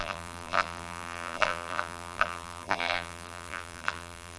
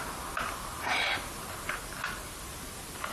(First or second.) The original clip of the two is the second